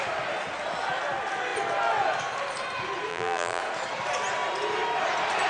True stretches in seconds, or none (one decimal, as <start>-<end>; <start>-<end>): 0.0-3.1; 3.6-5.5